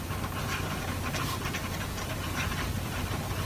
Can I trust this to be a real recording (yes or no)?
yes